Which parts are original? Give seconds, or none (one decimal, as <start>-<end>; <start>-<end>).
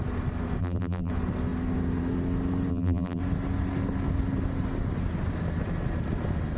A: 0.0-0.6; 1.1-2.7; 3.2-6.6